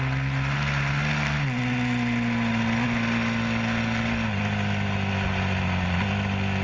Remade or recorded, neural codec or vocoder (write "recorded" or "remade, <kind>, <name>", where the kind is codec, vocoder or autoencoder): recorded